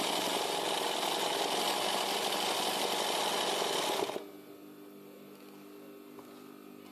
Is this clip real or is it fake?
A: real